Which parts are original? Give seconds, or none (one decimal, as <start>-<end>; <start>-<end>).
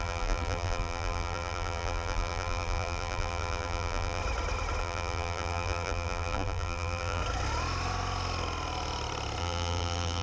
4.2-4.8; 7.2-9.4